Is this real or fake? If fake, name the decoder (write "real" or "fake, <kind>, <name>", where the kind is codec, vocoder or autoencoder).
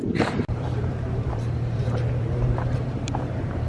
fake, vocoder, BigVGAN v2